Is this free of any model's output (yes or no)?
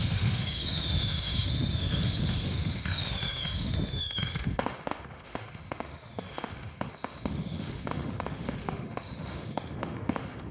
no